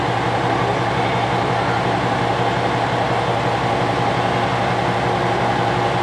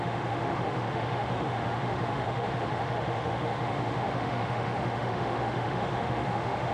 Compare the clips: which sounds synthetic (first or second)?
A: second